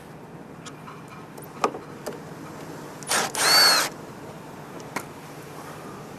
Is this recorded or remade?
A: recorded